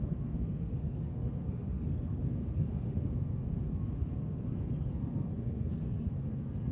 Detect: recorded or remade remade